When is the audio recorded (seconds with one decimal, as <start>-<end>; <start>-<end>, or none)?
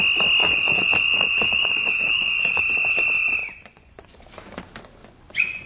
0.0-0.4; 2.6-3.4; 4.2-5.0